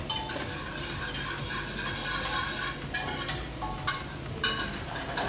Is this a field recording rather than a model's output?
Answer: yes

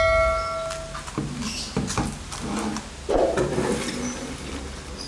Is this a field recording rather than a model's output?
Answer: yes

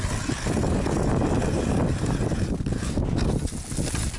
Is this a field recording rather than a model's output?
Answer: yes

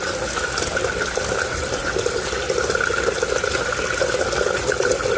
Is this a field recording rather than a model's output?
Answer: yes